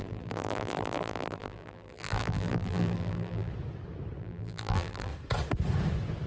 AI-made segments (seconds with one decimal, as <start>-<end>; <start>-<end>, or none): 0.0-3.5; 4.2-5.1